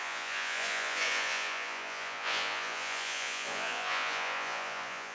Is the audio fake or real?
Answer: fake